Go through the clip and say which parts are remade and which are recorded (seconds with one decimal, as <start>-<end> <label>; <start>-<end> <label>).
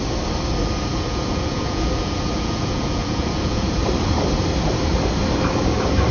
0.0-0.9 recorded; 0.9-3.8 remade; 3.8-6.1 recorded